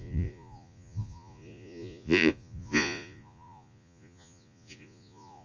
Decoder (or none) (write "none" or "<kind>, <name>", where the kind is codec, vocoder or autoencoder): vocoder, Vocos